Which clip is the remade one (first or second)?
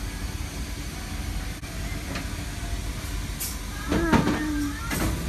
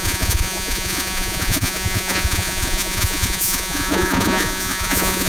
second